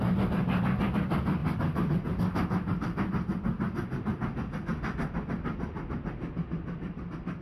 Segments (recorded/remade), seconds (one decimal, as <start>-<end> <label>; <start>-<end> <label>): 0.0-7.4 recorded